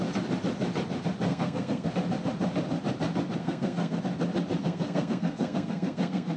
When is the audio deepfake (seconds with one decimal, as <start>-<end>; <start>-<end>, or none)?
1.3-1.9; 3.4-4.0; 4.6-6.4